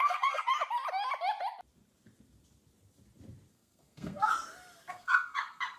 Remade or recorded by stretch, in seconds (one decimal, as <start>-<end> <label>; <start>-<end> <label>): 0.0-0.5 remade; 0.5-3.5 recorded; 3.5-4.3 remade; 4.3-4.9 recorded; 4.9-5.8 remade